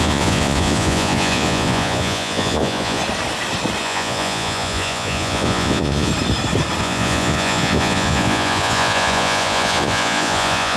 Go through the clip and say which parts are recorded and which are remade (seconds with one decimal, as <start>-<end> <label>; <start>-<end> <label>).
0.0-3.0 remade; 3.0-3.8 recorded; 3.8-6.1 remade; 6.1-6.8 recorded; 6.8-10.8 remade